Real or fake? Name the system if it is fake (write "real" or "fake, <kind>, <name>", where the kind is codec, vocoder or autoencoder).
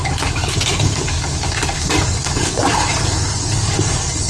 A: fake, codec, DAC